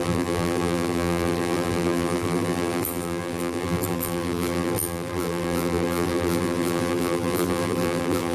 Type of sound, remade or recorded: remade